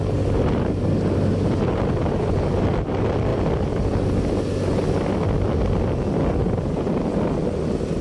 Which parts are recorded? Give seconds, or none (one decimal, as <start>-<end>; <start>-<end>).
0.0-8.0